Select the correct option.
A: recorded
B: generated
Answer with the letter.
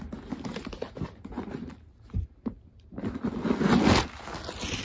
A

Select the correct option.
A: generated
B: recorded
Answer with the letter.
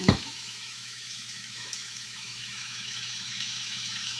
A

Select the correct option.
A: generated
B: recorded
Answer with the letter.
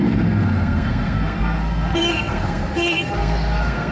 A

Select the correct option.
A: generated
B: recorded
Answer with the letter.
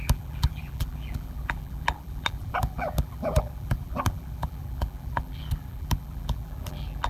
A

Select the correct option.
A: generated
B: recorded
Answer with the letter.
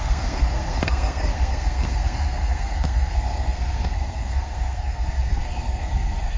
A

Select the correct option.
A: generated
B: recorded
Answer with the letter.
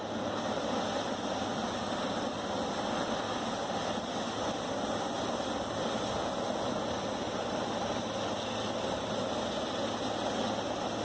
B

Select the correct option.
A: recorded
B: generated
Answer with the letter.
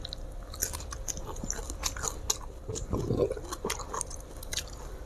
A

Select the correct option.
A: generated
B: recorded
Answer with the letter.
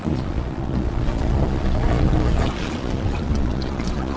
A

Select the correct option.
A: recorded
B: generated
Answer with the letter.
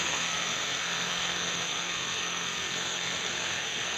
B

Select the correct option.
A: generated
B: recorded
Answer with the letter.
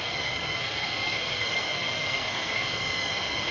A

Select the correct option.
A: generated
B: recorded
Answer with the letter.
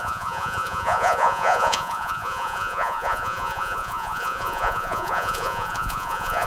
A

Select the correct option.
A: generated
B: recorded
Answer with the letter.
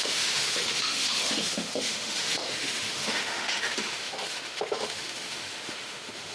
A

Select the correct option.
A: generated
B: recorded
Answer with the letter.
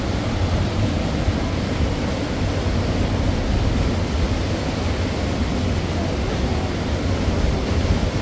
B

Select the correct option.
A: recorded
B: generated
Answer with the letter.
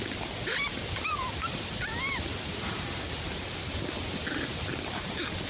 A